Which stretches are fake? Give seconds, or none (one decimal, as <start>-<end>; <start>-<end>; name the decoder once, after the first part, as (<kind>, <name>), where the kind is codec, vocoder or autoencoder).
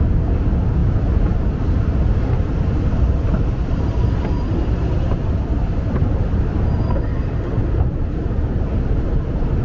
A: 7.1-8.6 (vocoder, BigVGAN v2)